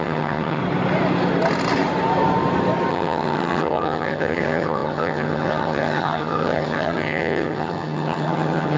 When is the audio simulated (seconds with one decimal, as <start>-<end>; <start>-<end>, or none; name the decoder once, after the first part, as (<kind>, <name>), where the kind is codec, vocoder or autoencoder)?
0.0-0.6 (vocoder, HiFi-GAN); 2.9-8.8